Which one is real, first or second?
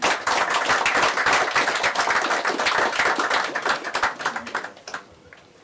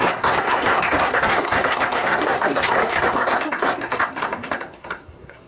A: first